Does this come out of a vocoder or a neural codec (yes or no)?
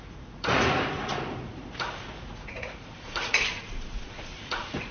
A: yes